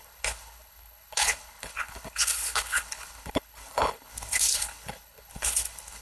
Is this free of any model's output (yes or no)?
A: no